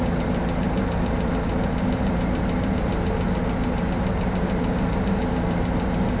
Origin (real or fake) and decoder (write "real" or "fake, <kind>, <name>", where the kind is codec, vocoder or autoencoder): real